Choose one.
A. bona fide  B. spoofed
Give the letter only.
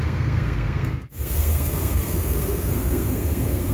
B